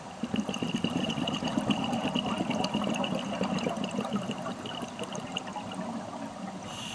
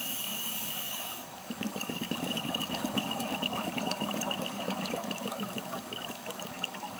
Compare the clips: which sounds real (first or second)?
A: first